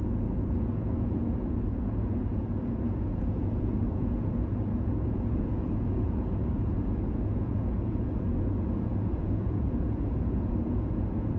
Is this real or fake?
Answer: fake